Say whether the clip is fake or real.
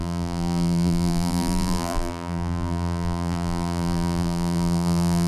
fake